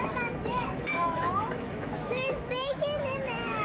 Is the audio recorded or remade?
remade